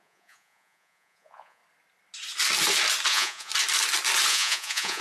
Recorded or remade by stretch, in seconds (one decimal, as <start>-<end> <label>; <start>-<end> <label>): 0.0-1.6 remade; 1.6-3.1 recorded; 3.1-3.5 remade; 3.5-4.3 recorded; 4.3-5.0 remade